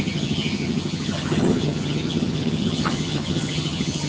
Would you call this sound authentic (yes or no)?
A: no